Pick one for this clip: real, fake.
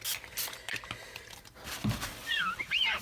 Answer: real